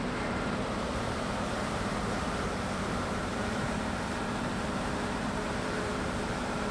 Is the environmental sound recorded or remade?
remade